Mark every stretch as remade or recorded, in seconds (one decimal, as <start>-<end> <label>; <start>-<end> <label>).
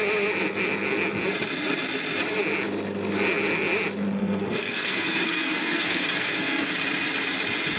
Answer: 0.0-4.2 recorded; 4.2-6.7 remade; 6.7-7.8 recorded